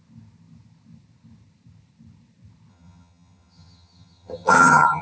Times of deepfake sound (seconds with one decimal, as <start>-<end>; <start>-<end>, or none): 2.7-5.0